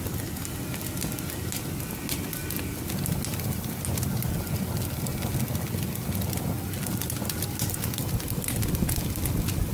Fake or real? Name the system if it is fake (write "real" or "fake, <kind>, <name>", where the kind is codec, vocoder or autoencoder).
real